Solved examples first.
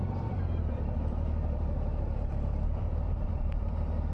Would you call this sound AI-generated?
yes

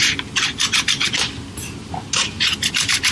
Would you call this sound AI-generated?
no